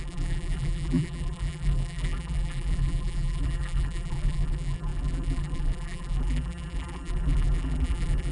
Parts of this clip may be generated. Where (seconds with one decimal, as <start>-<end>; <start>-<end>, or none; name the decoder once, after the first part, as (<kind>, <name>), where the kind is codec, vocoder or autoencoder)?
0.0-8.3 (vocoder, BigVGAN v2)